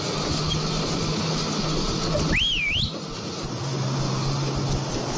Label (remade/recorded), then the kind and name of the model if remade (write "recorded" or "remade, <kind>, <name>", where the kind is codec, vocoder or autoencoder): recorded